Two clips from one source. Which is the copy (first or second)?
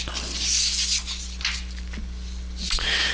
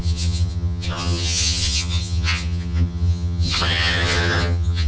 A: second